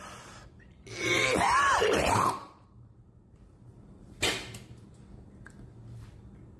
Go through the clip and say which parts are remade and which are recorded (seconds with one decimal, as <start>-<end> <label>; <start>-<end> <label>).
0.0-1.0 recorded; 1.0-4.2 remade; 4.2-6.6 recorded